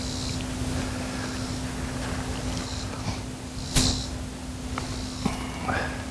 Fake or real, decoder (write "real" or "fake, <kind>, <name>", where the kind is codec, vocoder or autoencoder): real